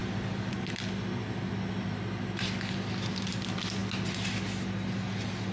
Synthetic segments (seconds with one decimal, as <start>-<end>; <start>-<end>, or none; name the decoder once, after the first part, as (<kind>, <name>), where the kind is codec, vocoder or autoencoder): none